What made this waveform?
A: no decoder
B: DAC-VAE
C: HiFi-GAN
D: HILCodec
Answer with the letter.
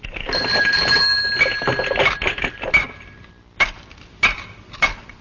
A